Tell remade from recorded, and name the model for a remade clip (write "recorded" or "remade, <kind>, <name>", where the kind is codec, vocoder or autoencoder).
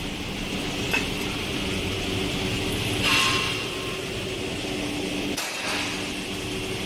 recorded